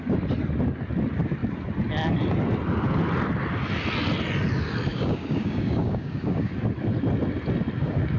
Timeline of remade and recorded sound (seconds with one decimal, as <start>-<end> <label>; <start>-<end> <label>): 0.0-4.9 recorded; 4.9-6.5 remade; 6.5-8.2 recorded